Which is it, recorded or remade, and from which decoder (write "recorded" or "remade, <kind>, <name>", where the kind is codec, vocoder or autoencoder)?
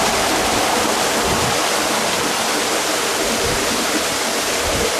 recorded